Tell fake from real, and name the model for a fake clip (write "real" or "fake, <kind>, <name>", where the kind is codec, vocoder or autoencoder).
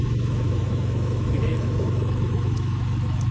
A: fake, autoencoder, DAC-VAE